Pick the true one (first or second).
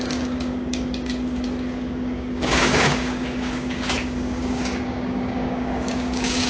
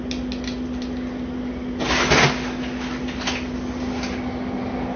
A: second